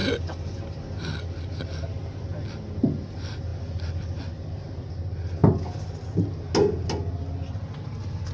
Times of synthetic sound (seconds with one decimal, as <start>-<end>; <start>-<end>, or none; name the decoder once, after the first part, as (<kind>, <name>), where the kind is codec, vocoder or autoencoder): none